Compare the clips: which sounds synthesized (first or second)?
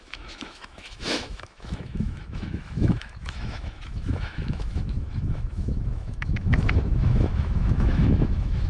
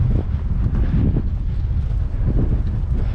first